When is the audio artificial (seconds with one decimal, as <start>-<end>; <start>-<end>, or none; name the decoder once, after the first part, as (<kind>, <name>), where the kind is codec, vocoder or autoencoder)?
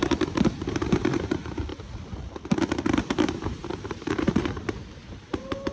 0.0-1.7 (vocoder, BigVGAN v2); 3.2-5.7